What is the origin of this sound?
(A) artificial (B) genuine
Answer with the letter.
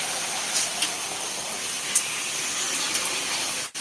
B